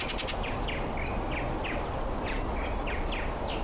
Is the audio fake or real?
real